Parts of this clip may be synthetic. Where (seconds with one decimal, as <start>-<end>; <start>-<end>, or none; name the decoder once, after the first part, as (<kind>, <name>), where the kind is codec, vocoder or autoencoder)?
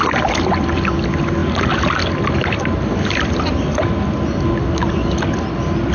none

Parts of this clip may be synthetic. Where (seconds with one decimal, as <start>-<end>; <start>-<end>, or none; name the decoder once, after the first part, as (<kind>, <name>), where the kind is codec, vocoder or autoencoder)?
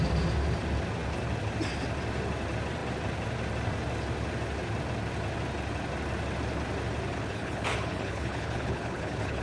7.1-9.4 (codec, HILCodec)